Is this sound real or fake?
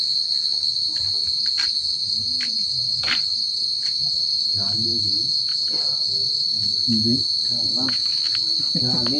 real